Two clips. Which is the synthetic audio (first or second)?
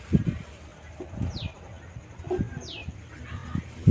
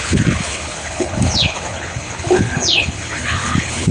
second